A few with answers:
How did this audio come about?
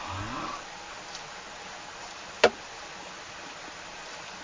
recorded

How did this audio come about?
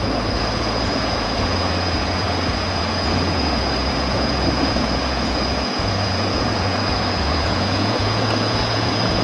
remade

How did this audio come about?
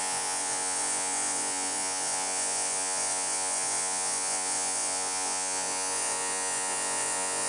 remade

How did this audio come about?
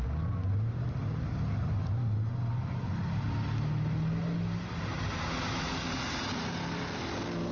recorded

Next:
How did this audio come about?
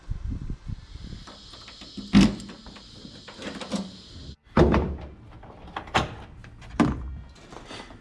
recorded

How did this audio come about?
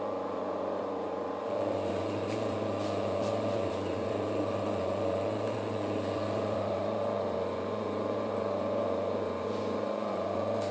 remade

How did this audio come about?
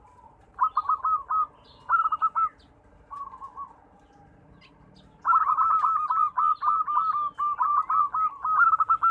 recorded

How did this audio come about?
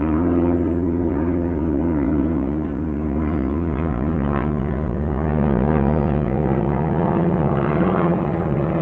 remade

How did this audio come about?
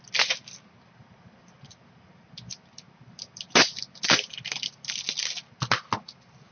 recorded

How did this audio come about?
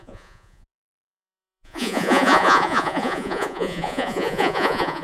remade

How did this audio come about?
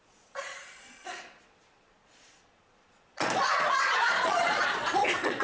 remade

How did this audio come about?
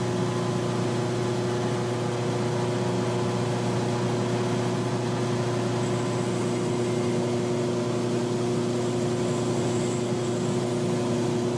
recorded